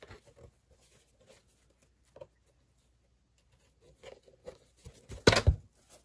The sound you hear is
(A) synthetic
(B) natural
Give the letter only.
B